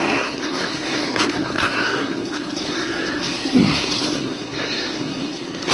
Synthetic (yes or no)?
yes